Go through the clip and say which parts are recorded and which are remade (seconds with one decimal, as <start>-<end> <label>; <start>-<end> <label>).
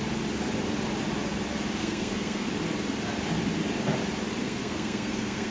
0.0-1.8 recorded; 1.8-2.5 remade; 2.5-4.4 recorded; 4.4-5.5 remade